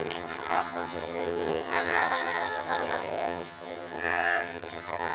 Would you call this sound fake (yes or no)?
yes